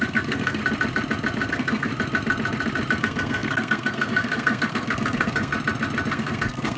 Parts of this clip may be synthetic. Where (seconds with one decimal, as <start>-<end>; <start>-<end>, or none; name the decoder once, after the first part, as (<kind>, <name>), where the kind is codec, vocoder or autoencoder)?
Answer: 0.0-0.6 (codec, SNAC); 1.5-1.9; 3.0-5.5; 6.1-6.8